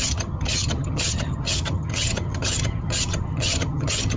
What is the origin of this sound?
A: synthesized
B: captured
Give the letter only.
A